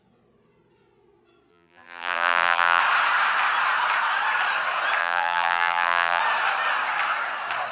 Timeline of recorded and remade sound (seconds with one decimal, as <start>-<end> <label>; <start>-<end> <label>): 0.0-1.5 recorded; 1.5-2.8 remade; 2.8-5.0 recorded; 5.0-6.2 remade; 6.2-7.7 recorded